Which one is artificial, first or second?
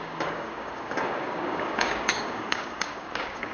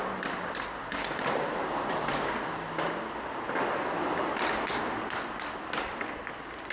first